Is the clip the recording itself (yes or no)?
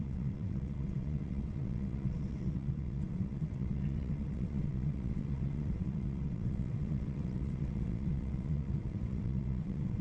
no